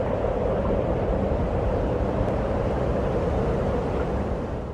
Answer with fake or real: real